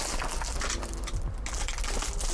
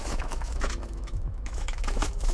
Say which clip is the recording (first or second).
first